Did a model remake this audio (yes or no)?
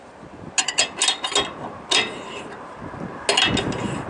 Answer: no